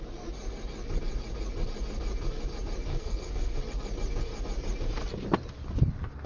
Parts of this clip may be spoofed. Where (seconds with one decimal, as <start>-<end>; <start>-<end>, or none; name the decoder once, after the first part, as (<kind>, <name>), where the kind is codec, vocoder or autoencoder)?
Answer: 2.9-3.6 (codec, SNAC)